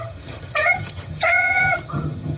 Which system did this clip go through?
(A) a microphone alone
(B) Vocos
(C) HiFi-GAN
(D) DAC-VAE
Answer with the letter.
C